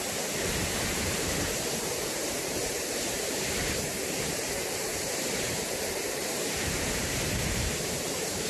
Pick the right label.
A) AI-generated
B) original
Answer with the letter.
A